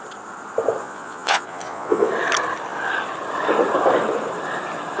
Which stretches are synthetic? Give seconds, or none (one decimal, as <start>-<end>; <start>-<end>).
0.8-2.1